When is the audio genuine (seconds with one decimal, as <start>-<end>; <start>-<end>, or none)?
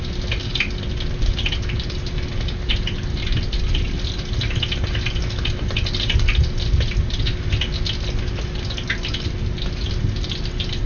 0.0-10.9